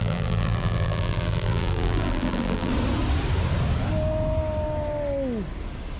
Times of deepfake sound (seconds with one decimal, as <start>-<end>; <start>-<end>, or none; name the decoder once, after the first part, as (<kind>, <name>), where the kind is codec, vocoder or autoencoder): 0.0-2.7 (vocoder, BigVGAN v2)